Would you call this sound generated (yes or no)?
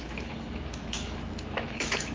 yes